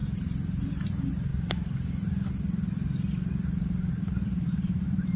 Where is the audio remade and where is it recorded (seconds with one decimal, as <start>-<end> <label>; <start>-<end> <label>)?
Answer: 0.0-0.7 recorded; 0.7-1.3 remade; 1.3-3.9 recorded; 3.9-5.2 remade